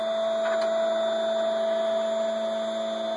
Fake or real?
real